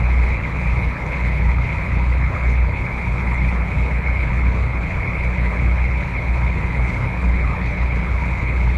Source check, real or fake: fake